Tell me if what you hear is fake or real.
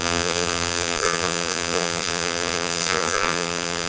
fake